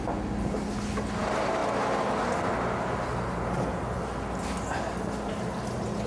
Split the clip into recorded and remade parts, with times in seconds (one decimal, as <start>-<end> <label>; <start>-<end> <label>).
0.0-6.1 recorded